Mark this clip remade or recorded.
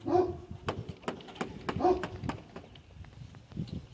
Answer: recorded